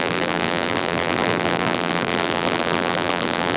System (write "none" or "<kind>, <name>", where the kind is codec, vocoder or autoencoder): vocoder, BigVGAN v2